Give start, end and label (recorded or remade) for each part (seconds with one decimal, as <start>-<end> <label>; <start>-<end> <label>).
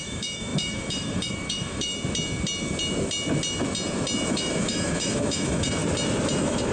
0.0-1.9 remade; 1.9-4.3 recorded; 4.3-5.8 remade; 5.8-6.3 recorded; 6.3-6.7 remade